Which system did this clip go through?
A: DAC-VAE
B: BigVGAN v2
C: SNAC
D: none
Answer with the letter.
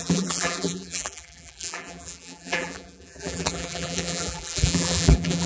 B